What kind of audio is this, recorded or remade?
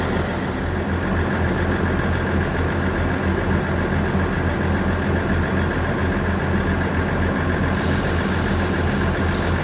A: recorded